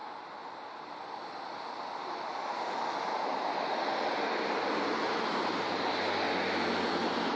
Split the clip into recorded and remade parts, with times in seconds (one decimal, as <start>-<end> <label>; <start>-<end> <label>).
0.0-0.9 remade; 0.9-2.3 recorded; 2.3-3.9 remade; 3.9-5.3 recorded; 5.3-6.0 remade; 6.0-7.4 recorded